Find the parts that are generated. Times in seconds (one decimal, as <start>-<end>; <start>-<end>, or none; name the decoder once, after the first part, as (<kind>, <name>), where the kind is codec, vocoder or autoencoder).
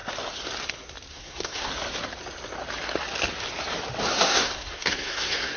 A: 1.1-1.7 (codec, SNAC); 4.1-5.6